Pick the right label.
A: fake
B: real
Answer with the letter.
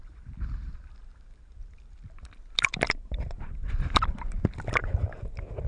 A